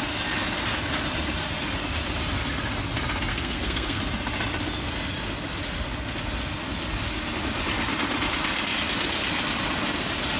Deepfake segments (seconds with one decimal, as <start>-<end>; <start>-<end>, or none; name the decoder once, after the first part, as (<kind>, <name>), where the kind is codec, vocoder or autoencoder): 3.3-4.0 (codec, SNAC)